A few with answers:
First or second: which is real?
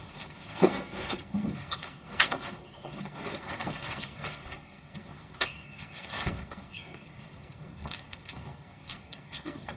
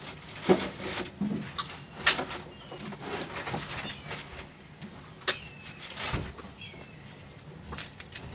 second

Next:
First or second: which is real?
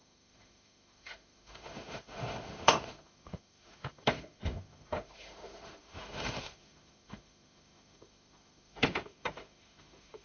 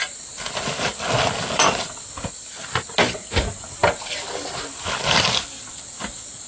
second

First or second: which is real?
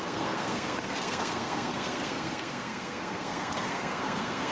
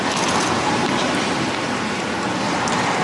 second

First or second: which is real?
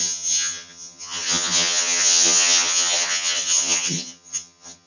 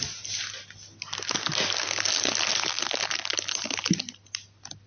second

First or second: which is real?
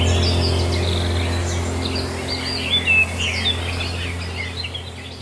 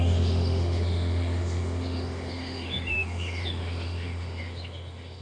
first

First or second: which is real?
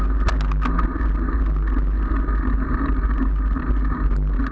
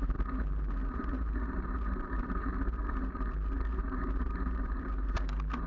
first